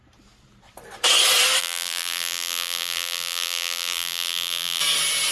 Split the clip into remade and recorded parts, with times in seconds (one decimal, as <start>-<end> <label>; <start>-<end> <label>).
0.0-1.6 recorded; 1.6-4.8 remade; 4.8-5.3 recorded